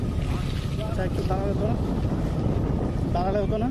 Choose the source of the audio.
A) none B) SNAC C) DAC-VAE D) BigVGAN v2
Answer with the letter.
A